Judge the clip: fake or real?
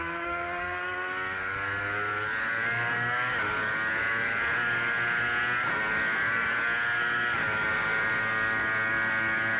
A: fake